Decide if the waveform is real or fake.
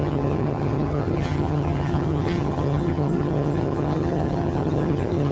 fake